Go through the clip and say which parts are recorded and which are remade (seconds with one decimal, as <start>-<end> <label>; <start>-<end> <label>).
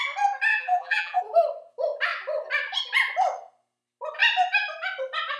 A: 0.0-0.5 recorded; 0.5-1.2 remade; 1.2-5.4 recorded